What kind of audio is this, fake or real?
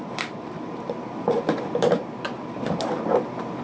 fake